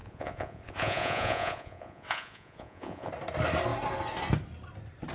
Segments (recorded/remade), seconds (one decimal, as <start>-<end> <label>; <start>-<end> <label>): 0.0-3.1 remade; 3.1-5.1 recorded